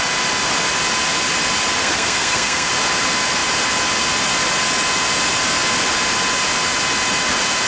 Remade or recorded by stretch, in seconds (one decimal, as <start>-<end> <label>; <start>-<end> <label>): 0.0-1.8 recorded; 1.8-2.7 remade; 2.7-7.7 recorded